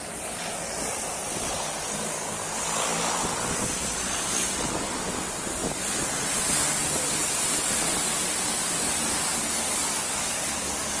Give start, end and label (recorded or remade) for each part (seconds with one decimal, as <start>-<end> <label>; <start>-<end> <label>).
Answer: 0.0-9.3 recorded; 9.3-11.0 remade